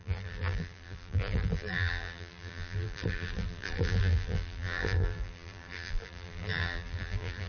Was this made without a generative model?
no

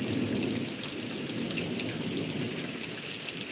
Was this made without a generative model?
yes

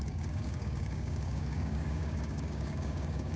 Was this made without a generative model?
no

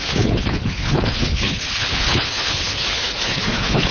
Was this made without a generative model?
no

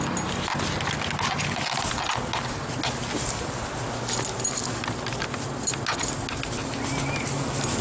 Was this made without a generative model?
yes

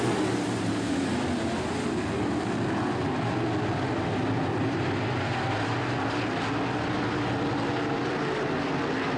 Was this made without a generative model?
yes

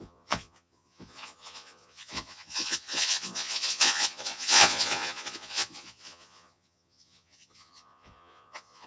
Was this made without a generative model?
no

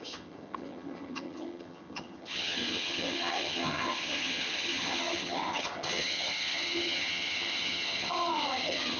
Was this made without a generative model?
no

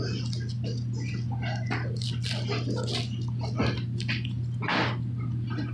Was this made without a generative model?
yes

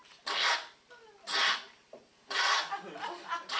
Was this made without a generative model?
yes